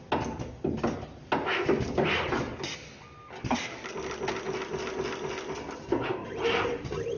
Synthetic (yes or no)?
no